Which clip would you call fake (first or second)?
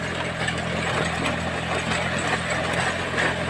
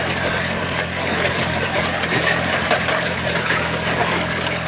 second